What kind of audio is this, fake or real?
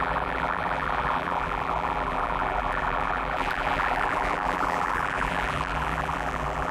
fake